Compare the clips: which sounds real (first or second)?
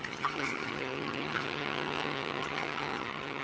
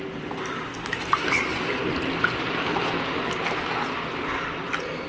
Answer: second